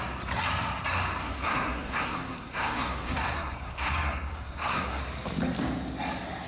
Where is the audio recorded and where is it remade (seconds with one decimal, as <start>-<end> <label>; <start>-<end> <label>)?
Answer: 0.0-1.2 recorded; 1.2-5.0 remade; 5.0-6.5 recorded